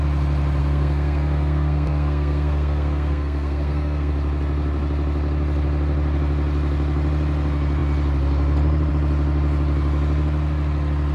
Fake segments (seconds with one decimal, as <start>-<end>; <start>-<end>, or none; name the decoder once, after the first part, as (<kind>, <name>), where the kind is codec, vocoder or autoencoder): 0.6-4.1 (codec, SNAC)